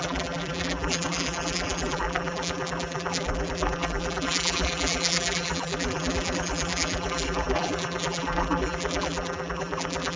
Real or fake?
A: fake